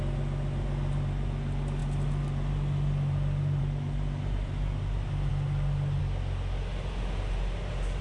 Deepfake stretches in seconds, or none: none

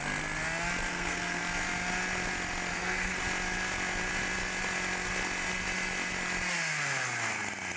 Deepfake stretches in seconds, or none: 0.9-1.4 (codec, SNAC); 2.7-3.2

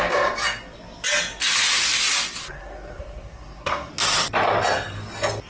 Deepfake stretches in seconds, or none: 2.4-3.9 (codec, SNAC)